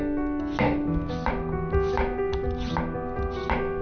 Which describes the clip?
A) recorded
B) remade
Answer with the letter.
A